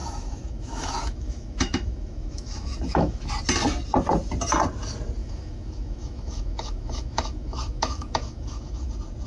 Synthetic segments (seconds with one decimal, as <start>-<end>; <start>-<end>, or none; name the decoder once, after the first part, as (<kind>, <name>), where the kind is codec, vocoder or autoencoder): 0.0-3.3 (autoencoder, DAC-VAE); 5.2-8.9